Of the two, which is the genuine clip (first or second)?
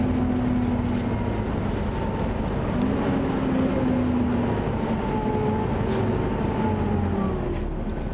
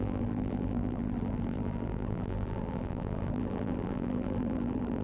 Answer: first